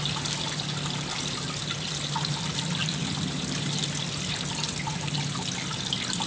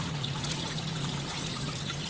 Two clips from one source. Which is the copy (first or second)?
second